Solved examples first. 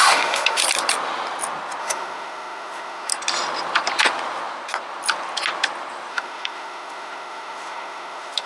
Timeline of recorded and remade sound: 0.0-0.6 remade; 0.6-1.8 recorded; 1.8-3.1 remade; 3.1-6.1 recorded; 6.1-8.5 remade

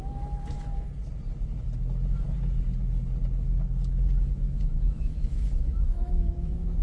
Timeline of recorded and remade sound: 0.0-0.7 remade; 0.7-4.2 recorded; 4.2-6.8 remade